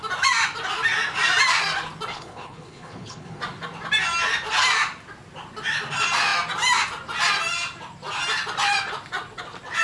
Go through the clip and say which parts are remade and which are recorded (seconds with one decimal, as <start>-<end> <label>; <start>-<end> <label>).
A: 0.0-2.1 recorded; 2.1-3.4 remade; 3.4-9.8 recorded